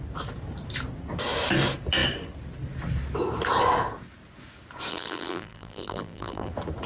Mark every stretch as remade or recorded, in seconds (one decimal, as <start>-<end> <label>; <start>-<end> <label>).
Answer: 0.0-4.9 recorded; 4.9-6.5 remade; 6.5-6.9 recorded